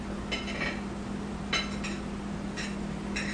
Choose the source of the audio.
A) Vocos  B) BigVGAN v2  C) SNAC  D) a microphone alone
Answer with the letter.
D